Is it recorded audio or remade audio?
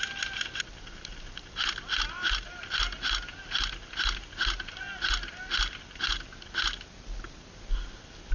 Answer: recorded